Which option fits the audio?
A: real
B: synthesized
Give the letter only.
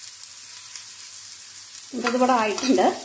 A